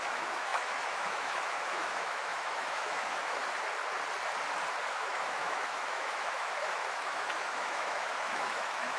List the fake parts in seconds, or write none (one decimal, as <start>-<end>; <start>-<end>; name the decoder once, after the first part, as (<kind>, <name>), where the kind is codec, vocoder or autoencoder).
0.0-3.4 (autoencoder, DAC-VAE); 4.9-9.0